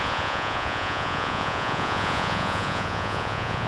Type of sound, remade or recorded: remade